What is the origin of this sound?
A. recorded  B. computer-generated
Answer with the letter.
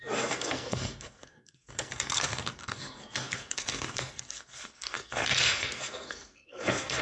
B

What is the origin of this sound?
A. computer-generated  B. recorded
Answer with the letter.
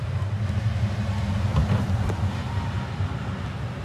B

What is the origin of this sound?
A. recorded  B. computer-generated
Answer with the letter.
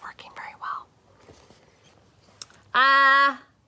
A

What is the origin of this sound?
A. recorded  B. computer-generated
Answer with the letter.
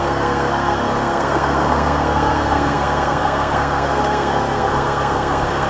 B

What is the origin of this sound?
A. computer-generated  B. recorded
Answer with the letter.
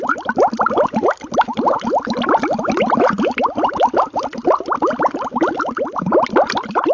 B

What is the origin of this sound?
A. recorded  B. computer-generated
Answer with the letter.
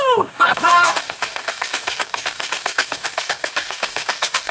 B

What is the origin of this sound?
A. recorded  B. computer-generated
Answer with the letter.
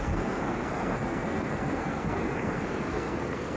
B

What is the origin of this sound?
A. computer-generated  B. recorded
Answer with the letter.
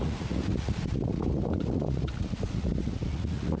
A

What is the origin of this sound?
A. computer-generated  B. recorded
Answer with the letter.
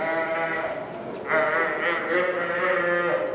B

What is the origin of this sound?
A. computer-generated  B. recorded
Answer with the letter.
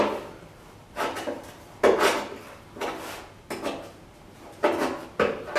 B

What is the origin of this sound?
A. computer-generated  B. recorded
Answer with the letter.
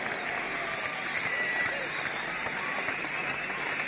B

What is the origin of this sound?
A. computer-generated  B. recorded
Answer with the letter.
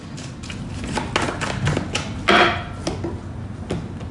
B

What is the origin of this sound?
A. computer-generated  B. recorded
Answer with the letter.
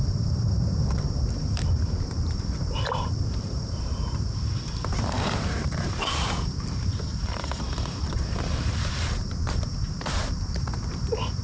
A